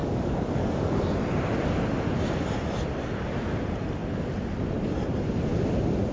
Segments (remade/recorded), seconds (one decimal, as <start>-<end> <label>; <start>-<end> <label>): 0.0-1.0 remade; 1.0-6.1 recorded

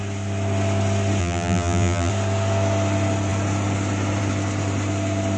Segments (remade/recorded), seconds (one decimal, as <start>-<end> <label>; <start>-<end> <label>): 0.0-1.2 recorded; 1.2-2.1 remade; 2.1-5.4 recorded

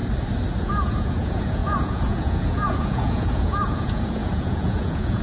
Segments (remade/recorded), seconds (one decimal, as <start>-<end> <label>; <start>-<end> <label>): 0.0-0.6 recorded; 0.6-5.2 remade

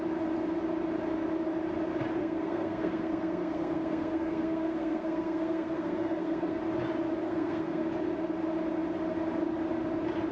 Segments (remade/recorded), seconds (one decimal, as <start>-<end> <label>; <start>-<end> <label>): 0.0-2.2 recorded; 2.2-6.6 remade; 6.6-7.2 recorded; 7.2-7.9 remade; 7.9-10.3 recorded

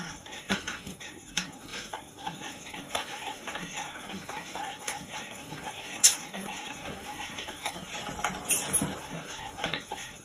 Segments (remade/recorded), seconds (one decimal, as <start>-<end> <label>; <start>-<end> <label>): 0.0-7.9 remade; 7.9-9.0 recorded; 9.0-10.2 remade

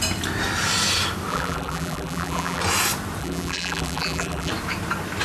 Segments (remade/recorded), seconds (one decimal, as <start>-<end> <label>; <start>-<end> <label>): 0.0-1.3 recorded; 1.3-2.6 remade; 2.6-3.2 recorded; 3.2-4.5 remade; 4.5-5.2 recorded

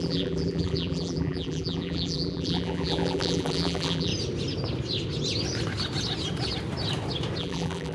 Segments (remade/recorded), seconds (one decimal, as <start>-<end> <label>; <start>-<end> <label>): 0.0-4.1 remade; 4.1-7.4 recorded; 7.4-7.9 remade